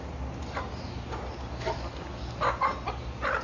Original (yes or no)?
yes